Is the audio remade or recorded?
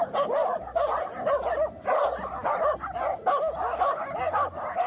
recorded